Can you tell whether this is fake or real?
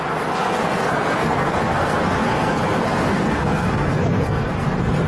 fake